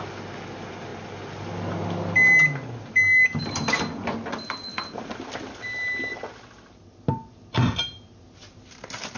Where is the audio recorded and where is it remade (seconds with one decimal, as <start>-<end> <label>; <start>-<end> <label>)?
0.0-9.2 recorded